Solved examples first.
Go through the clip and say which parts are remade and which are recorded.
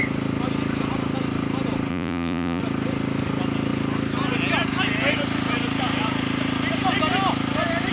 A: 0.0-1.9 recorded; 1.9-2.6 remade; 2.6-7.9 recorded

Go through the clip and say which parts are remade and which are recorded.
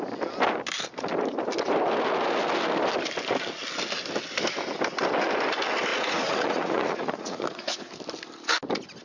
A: 0.0-5.9 recorded; 5.9-7.9 remade; 7.9-9.0 recorded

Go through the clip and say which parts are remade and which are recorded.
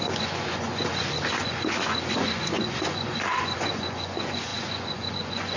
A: 0.0-5.6 remade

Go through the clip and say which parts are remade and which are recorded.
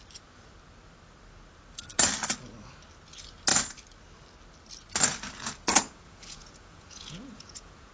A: 0.0-5.7 recorded; 5.7-7.9 remade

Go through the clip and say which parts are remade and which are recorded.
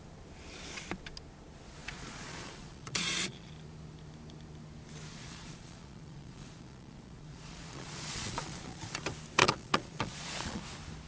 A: 0.0-1.8 recorded; 1.8-3.5 remade; 3.5-5.1 recorded; 5.1-9.0 remade; 9.0-9.4 recorded; 9.4-10.6 remade; 10.6-11.1 recorded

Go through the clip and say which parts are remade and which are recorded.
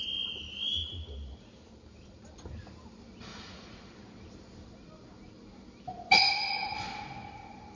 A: 0.0-3.3 recorded; 3.3-3.9 remade; 3.9-7.8 recorded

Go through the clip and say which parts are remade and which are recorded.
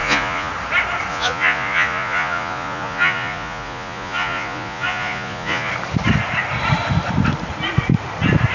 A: 0.0-0.5 remade; 0.5-1.1 recorded; 1.1-5.7 remade; 5.7-8.5 recorded